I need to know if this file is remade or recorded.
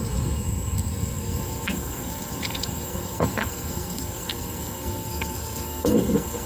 remade